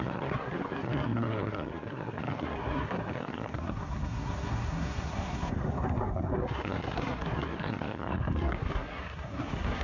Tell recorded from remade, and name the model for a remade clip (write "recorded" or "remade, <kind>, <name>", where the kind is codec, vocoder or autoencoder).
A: remade, codec, SNAC